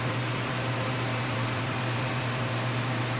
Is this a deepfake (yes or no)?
yes